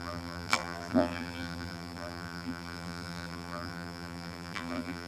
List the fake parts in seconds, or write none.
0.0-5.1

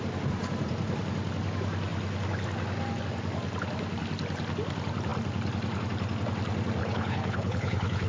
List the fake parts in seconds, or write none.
6.8-8.1

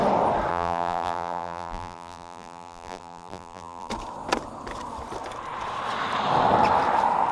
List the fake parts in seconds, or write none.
0.5-3.9

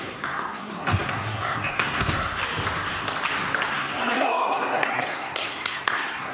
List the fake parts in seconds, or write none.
0.0-2.4; 3.7-6.3

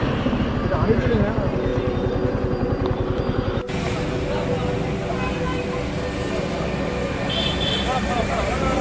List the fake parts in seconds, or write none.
none